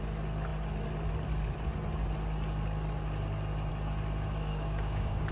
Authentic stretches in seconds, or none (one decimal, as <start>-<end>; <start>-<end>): 0.0-4.5